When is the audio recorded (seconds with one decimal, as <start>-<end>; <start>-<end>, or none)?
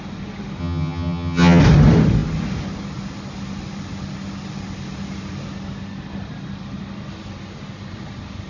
0.0-0.6; 1.6-8.5